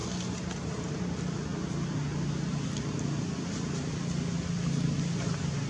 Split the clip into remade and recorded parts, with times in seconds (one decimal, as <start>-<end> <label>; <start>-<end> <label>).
0.0-5.7 recorded